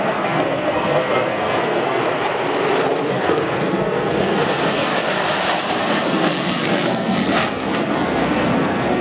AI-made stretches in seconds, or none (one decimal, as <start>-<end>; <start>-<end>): 0.0-2.0; 3.1-4.9; 5.8-9.0